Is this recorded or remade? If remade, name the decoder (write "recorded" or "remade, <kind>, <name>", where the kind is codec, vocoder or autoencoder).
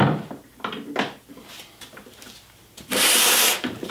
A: recorded